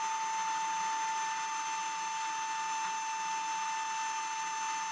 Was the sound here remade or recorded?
recorded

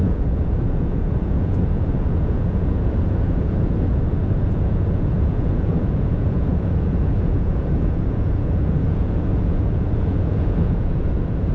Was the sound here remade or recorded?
remade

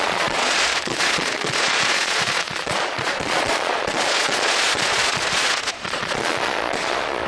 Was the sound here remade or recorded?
remade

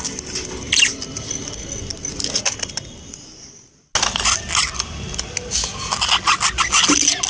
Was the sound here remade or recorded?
recorded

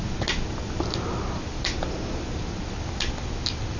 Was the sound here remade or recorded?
recorded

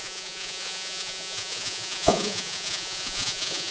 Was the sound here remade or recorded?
remade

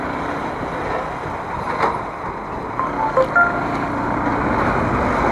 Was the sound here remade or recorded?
recorded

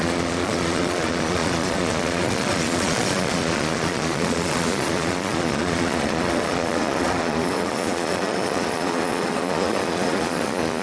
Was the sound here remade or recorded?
remade